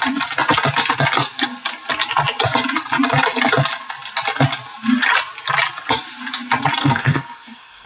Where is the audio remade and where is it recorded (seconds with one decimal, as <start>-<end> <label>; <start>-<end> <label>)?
0.0-6.8 recorded; 6.8-7.9 remade